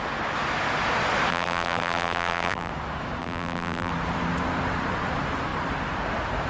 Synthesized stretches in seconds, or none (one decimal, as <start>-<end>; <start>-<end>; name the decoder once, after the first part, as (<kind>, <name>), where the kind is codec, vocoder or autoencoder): 1.3-2.7 (vocoder, BigVGAN v2); 3.2-3.9